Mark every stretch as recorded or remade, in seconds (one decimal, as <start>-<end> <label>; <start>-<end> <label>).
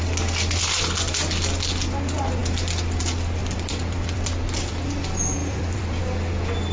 0.0-3.4 recorded; 3.4-4.9 remade; 4.9-5.4 recorded; 5.4-6.0 remade; 6.0-6.7 recorded